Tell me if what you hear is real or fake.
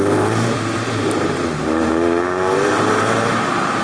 fake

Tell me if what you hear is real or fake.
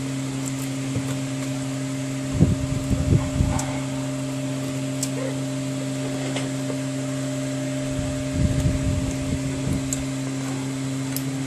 real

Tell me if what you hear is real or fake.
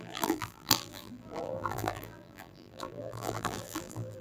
fake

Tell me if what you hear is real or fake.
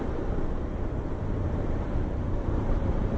fake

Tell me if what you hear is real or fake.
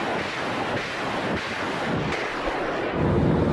real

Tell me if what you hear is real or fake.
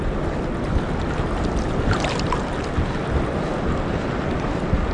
real